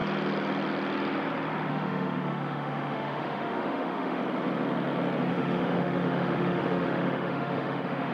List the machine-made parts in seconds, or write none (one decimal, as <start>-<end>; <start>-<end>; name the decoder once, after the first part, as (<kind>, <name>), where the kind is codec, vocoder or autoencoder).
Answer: 1.7-4.2 (autoencoder, DAC-VAE); 5.3-8.1